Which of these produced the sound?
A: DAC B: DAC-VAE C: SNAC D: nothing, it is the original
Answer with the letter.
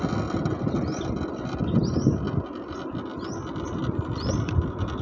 D